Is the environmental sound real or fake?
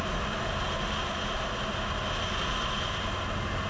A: real